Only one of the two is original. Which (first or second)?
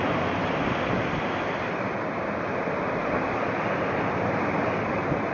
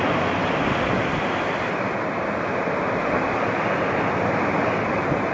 second